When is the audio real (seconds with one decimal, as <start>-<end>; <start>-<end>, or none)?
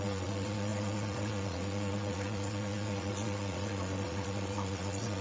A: none